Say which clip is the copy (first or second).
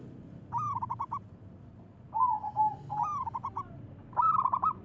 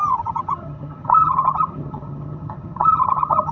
second